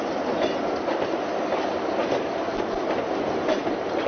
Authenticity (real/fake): real